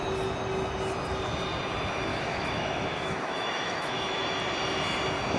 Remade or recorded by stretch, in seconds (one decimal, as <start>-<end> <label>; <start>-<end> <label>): 0.0-2.1 recorded; 2.1-4.2 remade; 4.2-5.4 recorded